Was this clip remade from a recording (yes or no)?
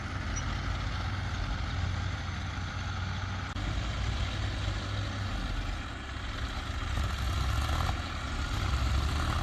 no